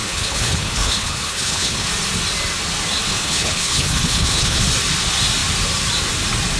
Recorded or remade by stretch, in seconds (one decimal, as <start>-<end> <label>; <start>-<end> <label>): 0.0-1.9 remade; 1.9-3.1 recorded; 3.1-4.6 remade; 4.6-6.6 recorded